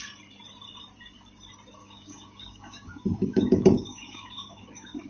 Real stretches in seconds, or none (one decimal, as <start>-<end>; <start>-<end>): 0.0-1.8